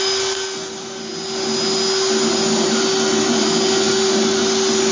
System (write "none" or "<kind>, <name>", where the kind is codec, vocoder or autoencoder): none